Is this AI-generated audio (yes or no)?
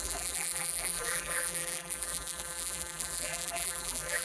yes